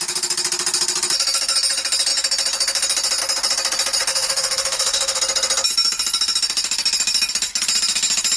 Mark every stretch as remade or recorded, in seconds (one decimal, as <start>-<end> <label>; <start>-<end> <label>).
0.0-4.1 recorded; 4.1-5.2 remade; 5.2-8.4 recorded